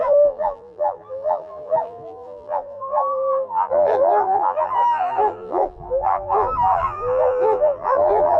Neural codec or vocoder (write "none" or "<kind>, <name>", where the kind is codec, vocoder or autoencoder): vocoder, BigVGAN v2